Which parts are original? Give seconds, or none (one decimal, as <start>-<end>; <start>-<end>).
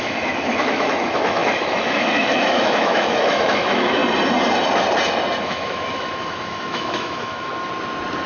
4.0-5.4; 7.5-8.3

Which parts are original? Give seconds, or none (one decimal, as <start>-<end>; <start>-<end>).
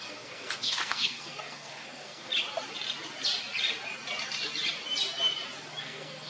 2.3-5.8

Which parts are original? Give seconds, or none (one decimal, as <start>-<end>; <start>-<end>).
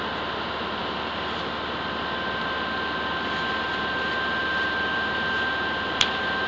0.0-6.5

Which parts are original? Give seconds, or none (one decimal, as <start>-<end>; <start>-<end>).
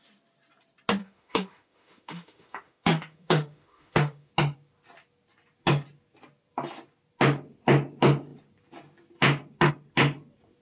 0.0-1.0; 4.3-10.6